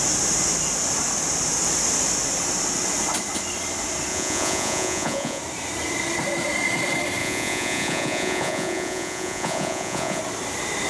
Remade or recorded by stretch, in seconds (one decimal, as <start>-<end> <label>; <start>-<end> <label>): 0.0-4.1 recorded; 4.1-5.4 remade; 5.4-7.2 recorded; 7.2-10.2 remade; 10.2-10.9 recorded